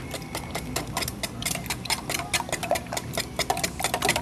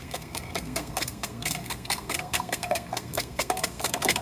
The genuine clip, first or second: first